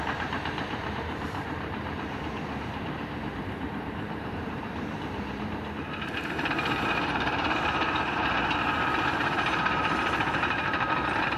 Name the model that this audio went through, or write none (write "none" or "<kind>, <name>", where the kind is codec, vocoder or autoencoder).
vocoder, BigVGAN v2